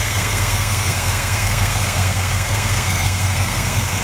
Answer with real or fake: fake